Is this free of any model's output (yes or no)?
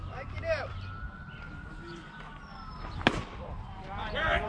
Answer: no